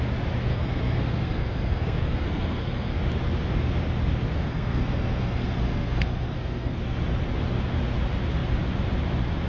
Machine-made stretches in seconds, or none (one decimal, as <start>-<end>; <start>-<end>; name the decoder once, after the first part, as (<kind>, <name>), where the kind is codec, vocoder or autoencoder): 0.5-3.0 (codec, SNAC); 4.3-6.8